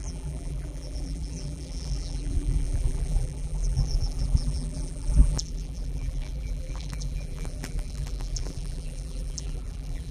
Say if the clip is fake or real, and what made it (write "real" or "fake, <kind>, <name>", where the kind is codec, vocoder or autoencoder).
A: fake, vocoder, BigVGAN v2